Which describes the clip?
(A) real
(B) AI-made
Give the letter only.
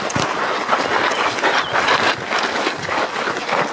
A